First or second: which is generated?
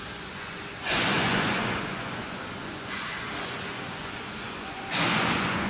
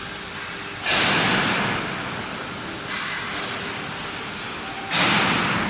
first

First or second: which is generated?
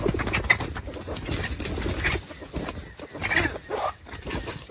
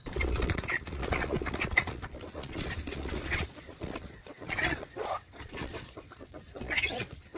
second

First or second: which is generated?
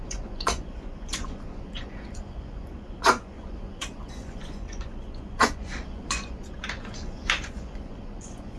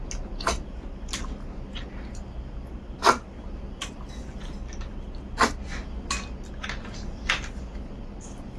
first